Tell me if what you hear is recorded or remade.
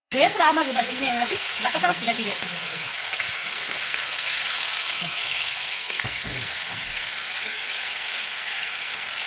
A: remade